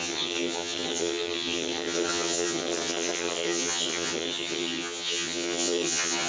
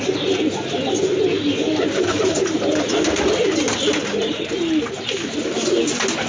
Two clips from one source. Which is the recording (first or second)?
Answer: second